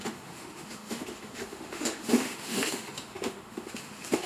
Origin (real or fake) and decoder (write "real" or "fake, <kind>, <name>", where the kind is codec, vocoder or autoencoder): fake, autoencoder, DAC-VAE